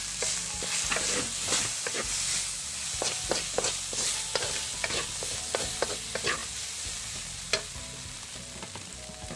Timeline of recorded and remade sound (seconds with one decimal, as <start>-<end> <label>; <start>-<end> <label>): 0.0-9.4 recorded